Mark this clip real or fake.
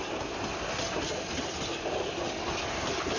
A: real